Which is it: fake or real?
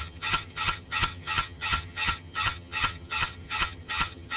fake